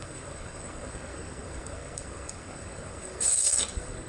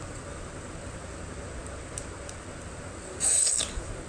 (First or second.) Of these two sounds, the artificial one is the first